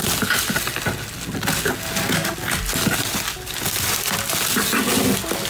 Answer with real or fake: real